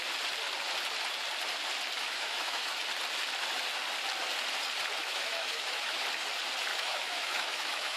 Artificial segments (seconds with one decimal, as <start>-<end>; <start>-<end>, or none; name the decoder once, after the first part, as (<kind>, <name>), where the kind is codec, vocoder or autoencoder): 2.0-2.8 (autoencoder, DAC-VAE); 5.0-6.0; 6.7-8.0